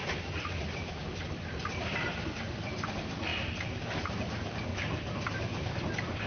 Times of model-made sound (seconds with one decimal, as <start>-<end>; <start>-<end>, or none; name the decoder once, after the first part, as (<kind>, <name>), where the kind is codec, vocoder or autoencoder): 0.0-4.7 (vocoder, BigVGAN v2); 5.6-6.3